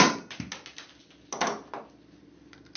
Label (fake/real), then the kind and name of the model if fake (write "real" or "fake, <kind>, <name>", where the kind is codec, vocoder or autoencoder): real